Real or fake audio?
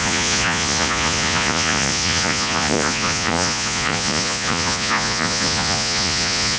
fake